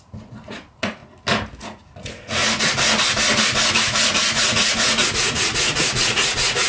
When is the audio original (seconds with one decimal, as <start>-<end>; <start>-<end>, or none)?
1.0-1.6; 2.4-3.7